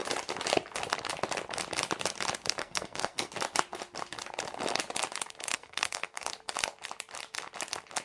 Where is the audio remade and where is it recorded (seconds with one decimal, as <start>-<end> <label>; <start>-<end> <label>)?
0.0-2.6 recorded; 2.6-3.3 remade; 3.3-5.5 recorded; 5.5-6.3 remade; 6.3-8.0 recorded